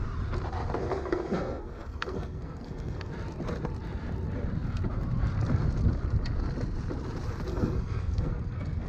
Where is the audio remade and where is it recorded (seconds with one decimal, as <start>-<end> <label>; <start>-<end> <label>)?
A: 0.0-0.8 recorded; 0.8-3.1 remade; 3.1-7.5 recorded; 7.5-8.9 remade